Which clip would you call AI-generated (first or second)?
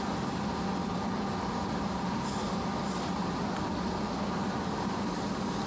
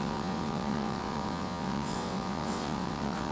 second